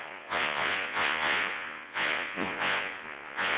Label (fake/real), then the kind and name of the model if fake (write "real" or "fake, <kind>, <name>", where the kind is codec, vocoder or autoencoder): fake, vocoder, Vocos